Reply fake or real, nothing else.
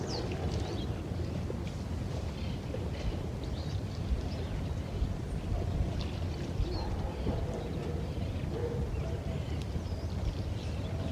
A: real